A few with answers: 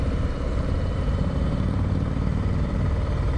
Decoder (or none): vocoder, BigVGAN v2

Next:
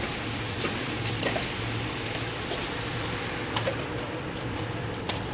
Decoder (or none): vocoder, BigVGAN v2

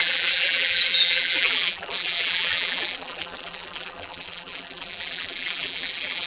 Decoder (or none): vocoder, BigVGAN v2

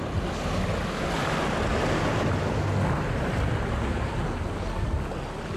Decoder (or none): none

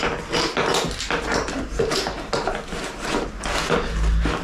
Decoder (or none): none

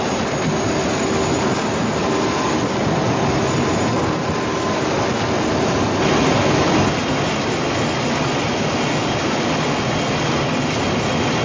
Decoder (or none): none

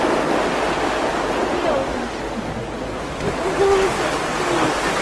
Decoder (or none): none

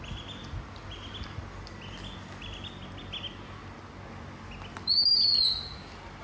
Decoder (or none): none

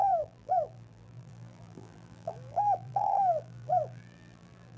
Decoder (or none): vocoder, BigVGAN v2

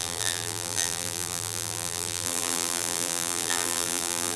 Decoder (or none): vocoder, BigVGAN v2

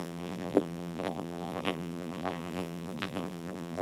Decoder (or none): vocoder, BigVGAN v2